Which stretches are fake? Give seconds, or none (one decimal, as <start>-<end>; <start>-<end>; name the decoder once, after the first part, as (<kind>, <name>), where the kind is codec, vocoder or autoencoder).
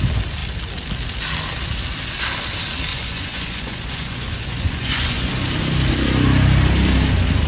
2.9-5.3 (vocoder, Vocos)